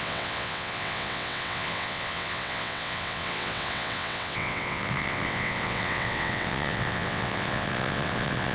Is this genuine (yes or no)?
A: no